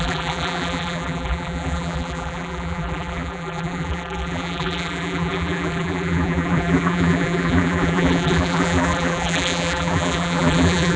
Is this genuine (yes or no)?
no